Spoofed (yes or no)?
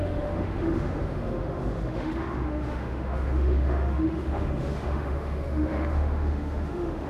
yes